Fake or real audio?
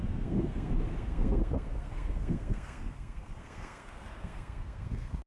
fake